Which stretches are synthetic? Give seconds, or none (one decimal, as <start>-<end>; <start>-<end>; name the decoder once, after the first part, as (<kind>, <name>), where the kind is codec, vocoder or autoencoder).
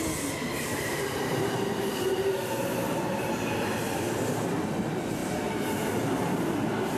0.7-2.3 (vocoder, BigVGAN v2); 5.2-6.5